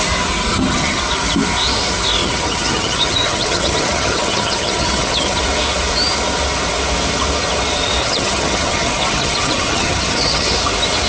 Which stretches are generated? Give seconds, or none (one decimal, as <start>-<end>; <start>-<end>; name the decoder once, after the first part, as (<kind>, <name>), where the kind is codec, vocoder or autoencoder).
0.5-1.0 (vocoder, HiFi-GAN); 2.2-5.4; 8.0-10.5